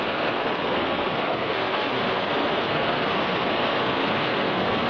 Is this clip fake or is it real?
fake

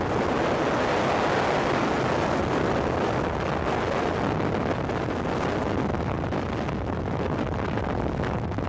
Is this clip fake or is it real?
real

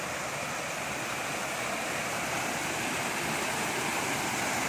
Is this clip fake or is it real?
real